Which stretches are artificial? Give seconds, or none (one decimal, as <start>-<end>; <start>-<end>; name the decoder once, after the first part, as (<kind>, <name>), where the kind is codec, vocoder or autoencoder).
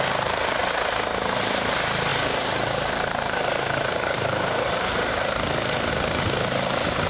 0.0-0.6 (vocoder, BigVGAN v2); 1.4-7.1